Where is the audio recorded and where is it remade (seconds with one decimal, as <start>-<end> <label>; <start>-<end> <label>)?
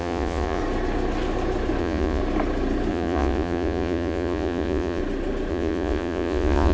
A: 0.0-0.6 remade; 0.6-1.8 recorded; 1.8-2.2 remade; 2.2-2.9 recorded; 2.9-5.0 remade; 5.0-5.5 recorded; 5.5-6.7 remade